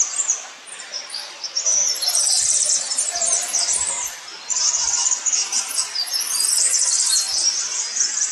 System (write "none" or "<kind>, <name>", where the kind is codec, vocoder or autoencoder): vocoder, BigVGAN v2